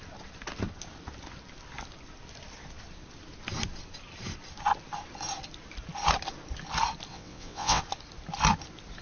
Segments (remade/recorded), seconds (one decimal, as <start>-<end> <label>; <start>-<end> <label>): 0.0-7.1 recorded; 7.1-7.8 remade; 7.8-9.0 recorded